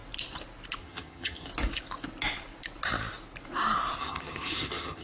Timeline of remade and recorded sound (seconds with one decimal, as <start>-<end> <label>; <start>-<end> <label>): 0.0-0.8 recorded; 0.8-1.5 remade; 1.5-4.0 recorded; 4.0-5.0 remade